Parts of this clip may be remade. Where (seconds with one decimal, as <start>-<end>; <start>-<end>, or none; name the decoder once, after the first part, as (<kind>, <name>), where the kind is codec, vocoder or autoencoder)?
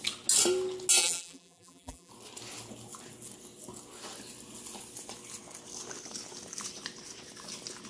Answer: 1.0-2.1 (vocoder, BigVGAN v2)